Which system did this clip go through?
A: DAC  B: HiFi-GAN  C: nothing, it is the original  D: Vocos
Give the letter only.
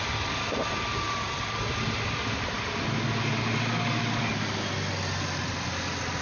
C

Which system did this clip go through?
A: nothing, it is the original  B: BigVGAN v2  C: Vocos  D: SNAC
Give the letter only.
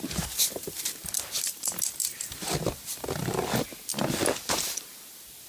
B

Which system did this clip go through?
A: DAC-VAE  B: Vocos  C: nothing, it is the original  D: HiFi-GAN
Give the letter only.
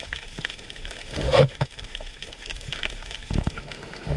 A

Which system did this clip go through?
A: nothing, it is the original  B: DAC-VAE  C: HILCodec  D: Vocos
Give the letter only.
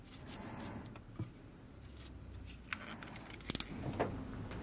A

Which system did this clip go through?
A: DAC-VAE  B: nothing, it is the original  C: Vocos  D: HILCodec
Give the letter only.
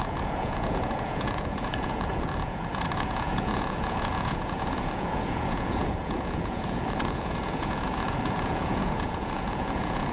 C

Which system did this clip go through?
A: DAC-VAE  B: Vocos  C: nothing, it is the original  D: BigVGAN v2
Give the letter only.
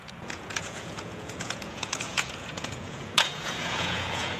B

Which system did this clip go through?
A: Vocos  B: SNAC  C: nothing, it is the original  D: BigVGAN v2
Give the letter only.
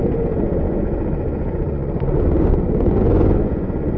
A